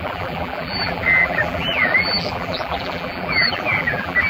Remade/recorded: remade